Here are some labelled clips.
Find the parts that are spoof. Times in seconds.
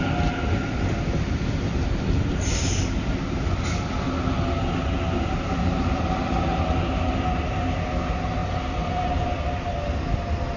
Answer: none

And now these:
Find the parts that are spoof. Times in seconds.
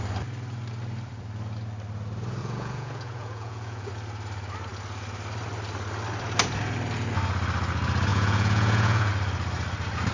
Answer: 2.4-3.9 (vocoder, Vocos); 8.1-9.1